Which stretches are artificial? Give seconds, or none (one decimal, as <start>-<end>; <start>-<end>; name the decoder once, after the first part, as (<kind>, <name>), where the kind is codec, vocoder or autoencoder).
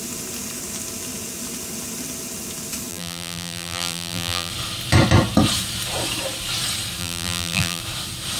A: 2.9-4.5 (vocoder, BigVGAN v2); 7.0-7.8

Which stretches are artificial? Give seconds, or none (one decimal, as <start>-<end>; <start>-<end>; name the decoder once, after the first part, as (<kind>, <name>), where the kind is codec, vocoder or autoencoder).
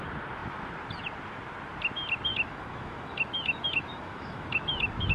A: 2.3-5.1 (autoencoder, DAC-VAE)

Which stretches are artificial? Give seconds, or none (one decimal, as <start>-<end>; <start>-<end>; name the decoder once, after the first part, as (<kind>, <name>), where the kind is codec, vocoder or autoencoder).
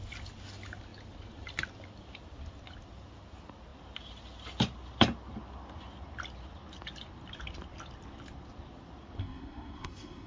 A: 9.2-10.3 (codec, SNAC)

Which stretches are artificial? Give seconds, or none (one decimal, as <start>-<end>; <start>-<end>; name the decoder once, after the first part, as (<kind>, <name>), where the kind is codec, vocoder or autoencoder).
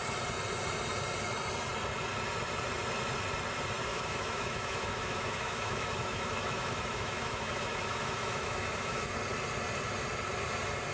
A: 3.9-9.1 (autoencoder, DAC-VAE)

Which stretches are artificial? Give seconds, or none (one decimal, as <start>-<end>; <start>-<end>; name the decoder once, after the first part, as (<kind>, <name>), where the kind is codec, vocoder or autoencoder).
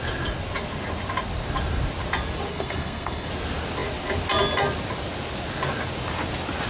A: 2.5-3.3 (codec, SNAC)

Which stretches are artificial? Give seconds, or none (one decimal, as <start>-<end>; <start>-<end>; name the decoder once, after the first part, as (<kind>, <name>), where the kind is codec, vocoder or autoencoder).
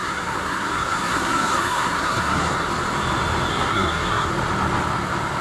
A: 0.0-2.7 (codec, SNAC); 3.5-4.3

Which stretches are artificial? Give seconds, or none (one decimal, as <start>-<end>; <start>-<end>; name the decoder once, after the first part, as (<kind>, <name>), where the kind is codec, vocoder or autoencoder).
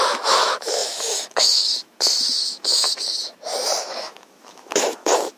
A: 0.0-5.4 (autoencoder, DAC-VAE)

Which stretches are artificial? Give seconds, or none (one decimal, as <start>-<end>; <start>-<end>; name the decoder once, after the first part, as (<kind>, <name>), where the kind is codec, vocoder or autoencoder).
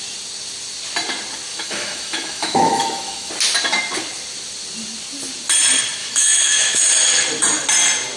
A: 1.5-3.3 (autoencoder, DAC-VAE); 6.0-6.8